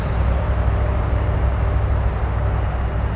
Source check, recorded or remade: recorded